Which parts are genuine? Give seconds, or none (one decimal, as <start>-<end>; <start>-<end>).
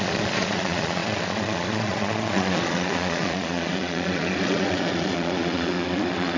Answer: none